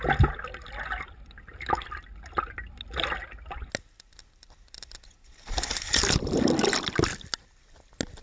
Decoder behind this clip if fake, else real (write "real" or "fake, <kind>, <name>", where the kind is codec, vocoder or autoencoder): real